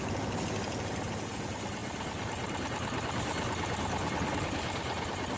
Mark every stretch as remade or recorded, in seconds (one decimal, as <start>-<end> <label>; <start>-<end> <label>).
0.0-5.4 recorded